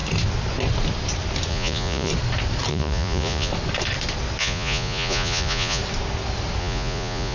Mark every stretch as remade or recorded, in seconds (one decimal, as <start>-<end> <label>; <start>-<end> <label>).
0.0-1.5 recorded; 1.5-2.1 remade; 2.1-2.7 recorded; 2.7-3.5 remade; 3.5-4.4 recorded; 4.4-5.8 remade; 5.8-6.6 recorded; 6.6-7.3 remade

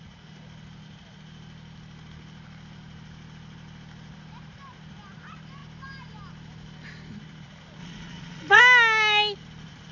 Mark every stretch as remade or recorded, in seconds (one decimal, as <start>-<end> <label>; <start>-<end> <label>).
0.0-7.8 recorded; 7.8-8.6 remade; 8.6-9.9 recorded

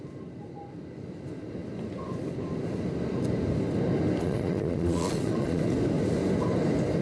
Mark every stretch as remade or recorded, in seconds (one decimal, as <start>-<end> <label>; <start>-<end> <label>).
0.0-4.2 recorded; 4.2-5.6 remade; 5.6-7.0 recorded

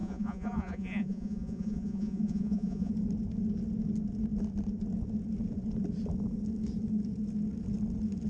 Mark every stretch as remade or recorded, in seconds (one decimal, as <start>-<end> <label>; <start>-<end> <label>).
0.0-2.9 remade; 2.9-8.3 recorded

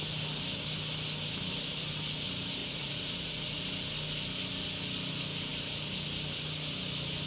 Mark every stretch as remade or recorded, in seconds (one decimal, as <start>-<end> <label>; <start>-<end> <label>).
0.0-2.6 recorded; 2.6-3.6 remade; 3.6-7.3 recorded

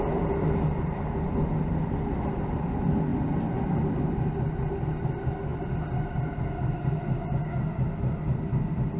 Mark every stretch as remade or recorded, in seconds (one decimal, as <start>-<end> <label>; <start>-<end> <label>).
0.0-9.0 recorded